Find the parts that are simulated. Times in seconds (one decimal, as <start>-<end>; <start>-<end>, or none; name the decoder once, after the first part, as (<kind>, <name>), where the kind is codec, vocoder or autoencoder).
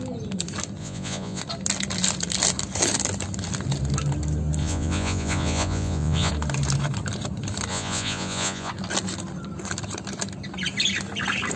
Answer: 0.8-1.4 (vocoder, Vocos); 4.6-6.3; 7.7-8.7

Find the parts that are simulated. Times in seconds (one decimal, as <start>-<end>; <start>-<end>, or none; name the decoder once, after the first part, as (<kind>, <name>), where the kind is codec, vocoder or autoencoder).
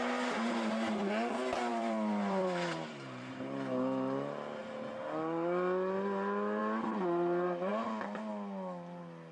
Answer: 1.7-3.3 (vocoder, BigVGAN v2)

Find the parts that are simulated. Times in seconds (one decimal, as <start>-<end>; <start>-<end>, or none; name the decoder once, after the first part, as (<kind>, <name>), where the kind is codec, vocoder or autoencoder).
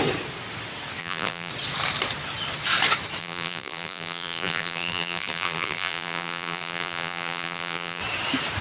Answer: 1.0-1.5 (vocoder, BigVGAN v2); 3.2-8.0